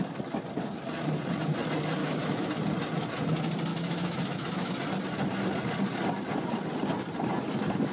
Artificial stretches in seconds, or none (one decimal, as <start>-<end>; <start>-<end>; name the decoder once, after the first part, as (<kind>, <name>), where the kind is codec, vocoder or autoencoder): 2.0-2.5 (autoencoder, DAC-VAE); 3.7-4.7